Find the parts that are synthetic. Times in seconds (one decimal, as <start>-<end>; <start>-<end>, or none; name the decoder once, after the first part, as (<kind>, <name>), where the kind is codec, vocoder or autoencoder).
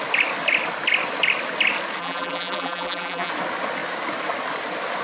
2.0-3.3 (vocoder, BigVGAN v2)